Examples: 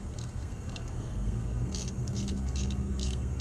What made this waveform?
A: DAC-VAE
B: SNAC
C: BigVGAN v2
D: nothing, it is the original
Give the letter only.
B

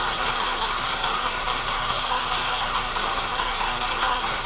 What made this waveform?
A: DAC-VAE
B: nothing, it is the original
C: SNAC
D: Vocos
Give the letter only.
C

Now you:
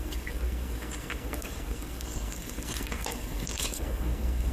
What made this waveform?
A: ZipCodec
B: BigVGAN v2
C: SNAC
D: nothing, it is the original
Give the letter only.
C